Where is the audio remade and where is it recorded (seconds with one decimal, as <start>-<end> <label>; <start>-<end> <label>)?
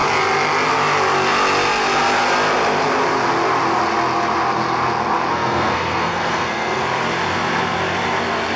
0.0-5.3 recorded; 5.3-6.8 remade; 6.8-8.6 recorded